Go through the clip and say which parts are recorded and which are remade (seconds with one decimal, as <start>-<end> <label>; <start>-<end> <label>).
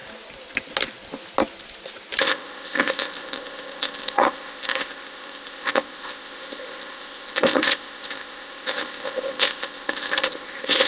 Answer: 0.0-2.2 recorded; 2.2-10.9 remade